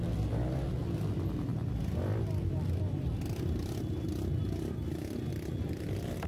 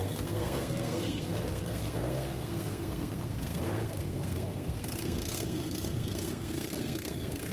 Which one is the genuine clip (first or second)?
first